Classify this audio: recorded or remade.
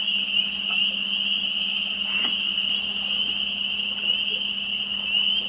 recorded